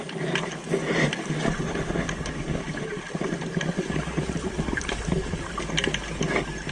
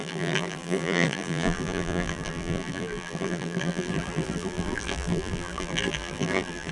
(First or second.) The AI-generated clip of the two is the second